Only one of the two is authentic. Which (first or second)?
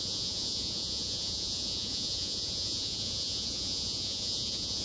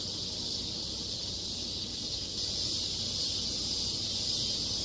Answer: second